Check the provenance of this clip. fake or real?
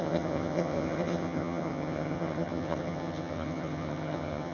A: fake